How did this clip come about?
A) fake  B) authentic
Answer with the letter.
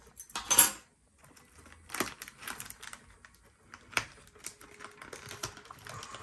B